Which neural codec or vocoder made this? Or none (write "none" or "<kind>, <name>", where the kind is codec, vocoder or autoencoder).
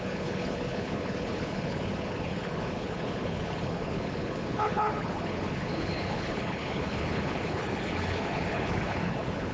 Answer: codec, HILCodec